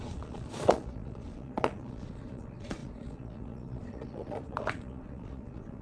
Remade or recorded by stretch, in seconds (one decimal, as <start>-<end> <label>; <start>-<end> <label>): 0.0-5.8 remade